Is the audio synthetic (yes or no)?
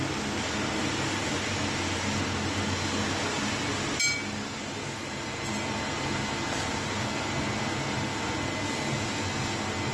no